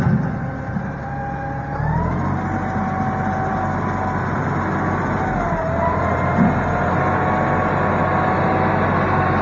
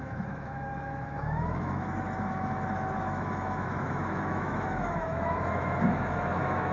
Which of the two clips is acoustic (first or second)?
first